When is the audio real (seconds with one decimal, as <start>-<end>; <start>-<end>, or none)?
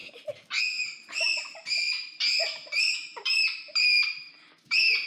0.0-1.6